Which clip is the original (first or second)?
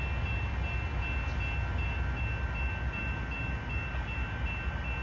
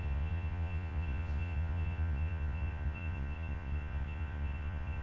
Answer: first